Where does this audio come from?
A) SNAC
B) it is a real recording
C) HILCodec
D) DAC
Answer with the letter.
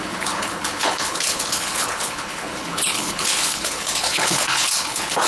C